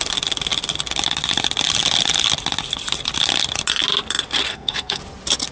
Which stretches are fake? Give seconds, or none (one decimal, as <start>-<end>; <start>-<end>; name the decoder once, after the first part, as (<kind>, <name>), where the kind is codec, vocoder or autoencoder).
4.5-5.0 (codec, SNAC)